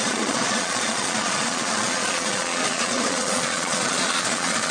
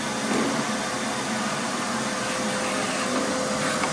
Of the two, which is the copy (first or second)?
first